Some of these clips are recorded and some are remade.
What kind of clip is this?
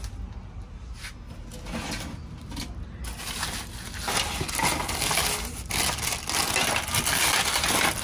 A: recorded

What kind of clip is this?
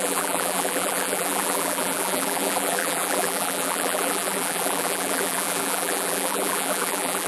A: remade